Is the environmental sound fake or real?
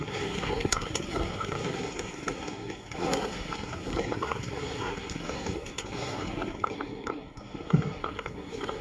fake